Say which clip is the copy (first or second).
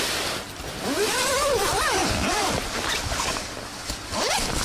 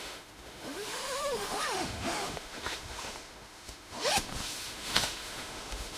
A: second